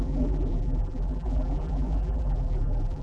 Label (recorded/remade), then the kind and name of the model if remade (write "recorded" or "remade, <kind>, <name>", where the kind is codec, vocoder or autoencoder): remade, vocoder, BigVGAN v2